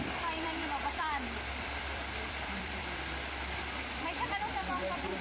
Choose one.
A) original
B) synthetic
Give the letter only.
B